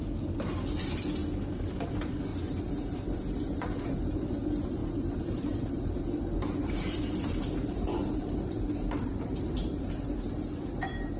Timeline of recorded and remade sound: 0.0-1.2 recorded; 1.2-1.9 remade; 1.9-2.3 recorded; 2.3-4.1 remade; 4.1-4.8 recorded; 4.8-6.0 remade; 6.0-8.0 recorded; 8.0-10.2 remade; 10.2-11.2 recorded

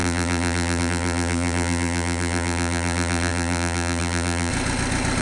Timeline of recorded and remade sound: 0.0-4.5 remade; 4.5-5.2 recorded

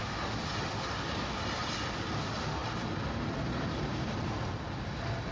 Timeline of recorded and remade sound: 0.0-2.6 remade; 2.6-3.9 recorded; 3.9-5.3 remade

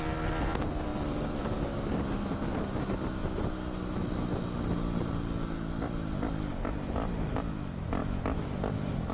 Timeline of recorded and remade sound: 0.0-0.9 recorded; 0.9-1.6 remade; 1.6-9.1 recorded

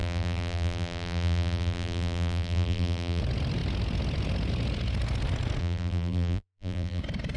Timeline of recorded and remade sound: 0.0-3.2 remade; 3.2-5.6 recorded; 5.6-7.0 remade; 7.0-7.4 recorded

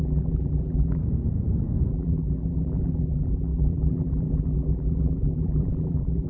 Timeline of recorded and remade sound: 0.0-1.0 remade; 1.0-1.9 recorded; 1.9-6.3 remade